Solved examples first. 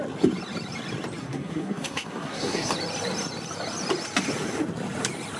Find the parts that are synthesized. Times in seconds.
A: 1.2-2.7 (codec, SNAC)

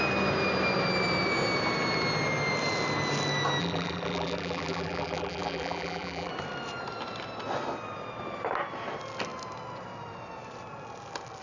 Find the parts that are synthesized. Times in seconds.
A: 3.6-6.3 (vocoder, BigVGAN v2)